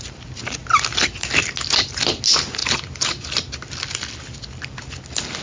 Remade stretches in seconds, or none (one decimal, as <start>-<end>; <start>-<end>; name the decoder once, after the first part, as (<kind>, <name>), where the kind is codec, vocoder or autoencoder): none